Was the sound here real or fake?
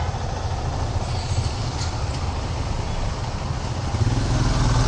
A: real